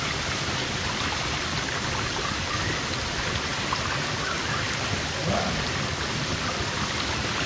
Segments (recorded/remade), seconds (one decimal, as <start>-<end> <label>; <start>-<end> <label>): 0.0-7.5 recorded